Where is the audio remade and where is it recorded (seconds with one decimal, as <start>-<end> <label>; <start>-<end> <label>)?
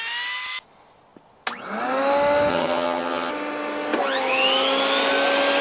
0.0-2.5 recorded; 2.5-3.3 remade; 3.3-5.6 recorded